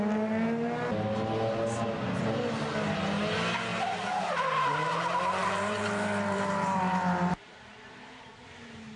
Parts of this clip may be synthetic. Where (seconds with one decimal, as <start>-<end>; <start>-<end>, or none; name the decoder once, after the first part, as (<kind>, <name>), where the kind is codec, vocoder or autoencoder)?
3.7-4.3 (vocoder, BigVGAN v2); 5.4-8.3